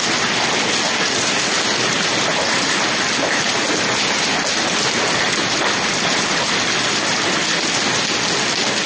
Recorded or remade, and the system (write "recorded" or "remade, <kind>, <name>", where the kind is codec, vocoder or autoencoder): recorded